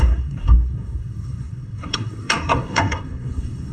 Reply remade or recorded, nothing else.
remade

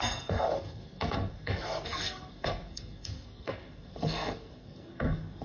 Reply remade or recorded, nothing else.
remade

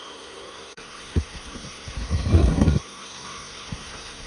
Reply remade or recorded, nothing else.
remade